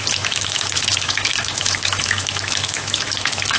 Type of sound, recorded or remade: remade